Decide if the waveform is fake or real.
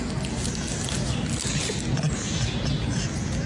real